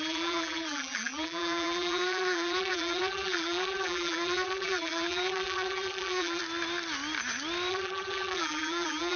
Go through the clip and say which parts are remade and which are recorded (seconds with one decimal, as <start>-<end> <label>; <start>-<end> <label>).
0.0-6.4 remade; 6.4-7.7 recorded; 7.7-9.2 remade